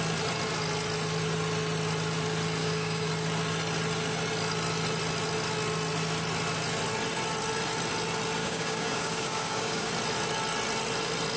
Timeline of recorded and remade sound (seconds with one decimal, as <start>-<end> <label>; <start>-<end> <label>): 0.0-2.6 recorded; 2.6-3.1 remade; 3.1-8.4 recorded; 8.4-9.9 remade; 9.9-11.4 recorded